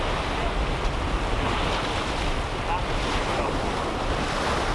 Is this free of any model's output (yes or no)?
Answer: yes